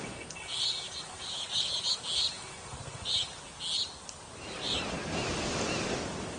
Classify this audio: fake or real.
real